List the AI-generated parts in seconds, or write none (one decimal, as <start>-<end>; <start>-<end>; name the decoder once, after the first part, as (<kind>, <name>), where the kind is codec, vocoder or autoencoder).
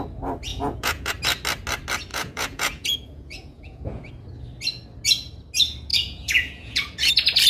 0.5-1.1 (vocoder, Vocos); 2.1-4.1; 5.9-7.1